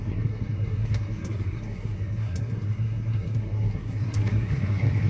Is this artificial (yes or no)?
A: yes